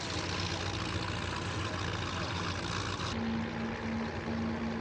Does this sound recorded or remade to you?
recorded